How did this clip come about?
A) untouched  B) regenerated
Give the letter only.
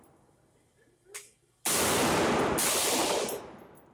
A